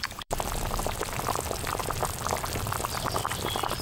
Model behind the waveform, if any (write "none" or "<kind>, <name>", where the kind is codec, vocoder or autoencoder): vocoder, BigVGAN v2